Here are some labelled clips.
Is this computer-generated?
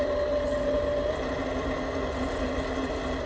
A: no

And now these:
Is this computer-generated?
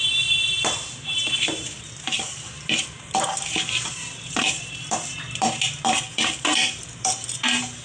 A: yes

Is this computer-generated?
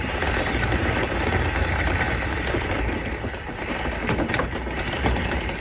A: no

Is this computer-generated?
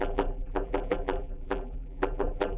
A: yes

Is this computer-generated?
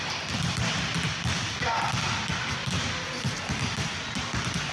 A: no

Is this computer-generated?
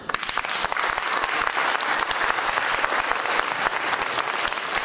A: yes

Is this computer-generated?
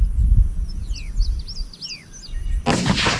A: no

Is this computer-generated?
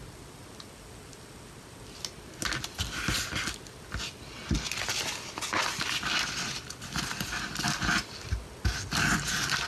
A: no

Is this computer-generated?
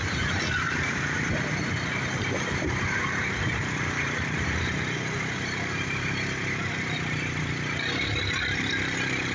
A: yes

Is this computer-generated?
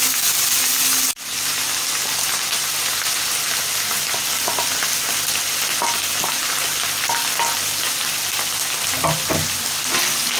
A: no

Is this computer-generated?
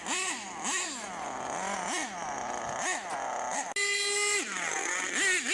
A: no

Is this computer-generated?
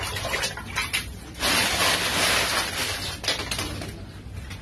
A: no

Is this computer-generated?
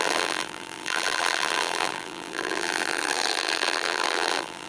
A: yes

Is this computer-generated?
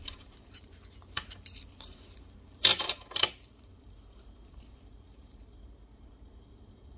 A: yes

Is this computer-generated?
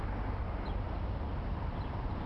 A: no